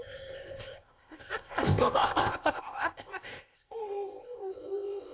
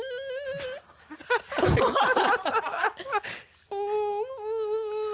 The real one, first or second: second